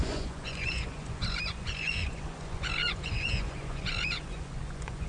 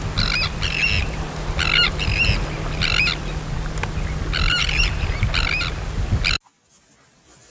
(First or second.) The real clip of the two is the second